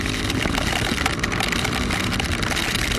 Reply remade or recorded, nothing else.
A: remade